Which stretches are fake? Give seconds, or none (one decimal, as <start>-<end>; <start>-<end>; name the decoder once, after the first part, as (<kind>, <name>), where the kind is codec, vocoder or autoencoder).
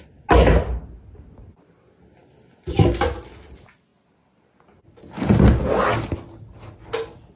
none